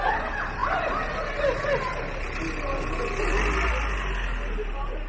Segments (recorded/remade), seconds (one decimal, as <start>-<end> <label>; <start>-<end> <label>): 0.0-5.1 recorded